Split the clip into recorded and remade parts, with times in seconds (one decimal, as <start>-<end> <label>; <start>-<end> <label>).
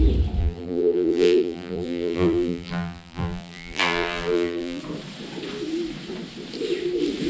0.0-0.4 recorded; 0.4-4.8 remade; 4.8-7.3 recorded